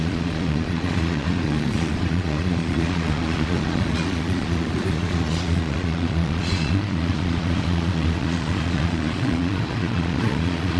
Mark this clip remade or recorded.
remade